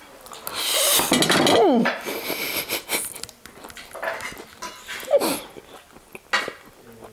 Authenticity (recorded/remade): recorded